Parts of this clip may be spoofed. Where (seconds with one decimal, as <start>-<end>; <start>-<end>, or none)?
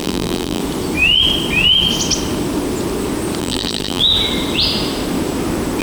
0.0-0.6; 3.4-4.0